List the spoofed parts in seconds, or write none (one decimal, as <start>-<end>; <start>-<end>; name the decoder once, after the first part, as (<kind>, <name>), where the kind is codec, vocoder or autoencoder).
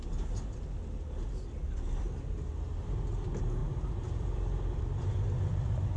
3.6-6.0 (vocoder, BigVGAN v2)